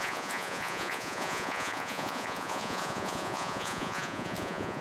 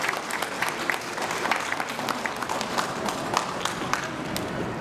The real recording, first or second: second